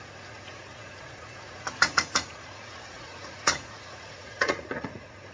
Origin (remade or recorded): remade